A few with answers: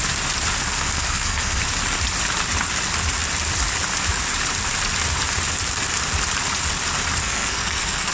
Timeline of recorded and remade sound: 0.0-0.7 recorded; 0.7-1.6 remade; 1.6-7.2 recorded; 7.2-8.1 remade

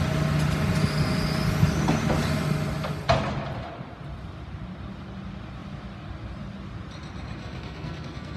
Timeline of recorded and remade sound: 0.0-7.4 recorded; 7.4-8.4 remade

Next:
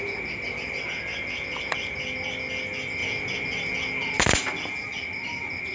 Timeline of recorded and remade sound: 0.0-5.7 recorded